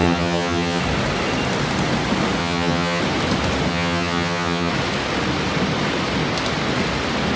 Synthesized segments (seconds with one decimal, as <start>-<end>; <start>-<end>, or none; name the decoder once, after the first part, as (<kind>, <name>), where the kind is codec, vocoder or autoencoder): 0.0-0.8 (vocoder, HiFi-GAN); 2.4-3.0; 3.7-4.7